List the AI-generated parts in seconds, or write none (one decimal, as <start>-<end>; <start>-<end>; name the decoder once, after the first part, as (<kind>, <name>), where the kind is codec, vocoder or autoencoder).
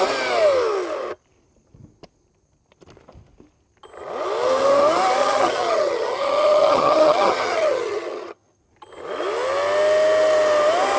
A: 5.2-8.6 (vocoder, HiFi-GAN)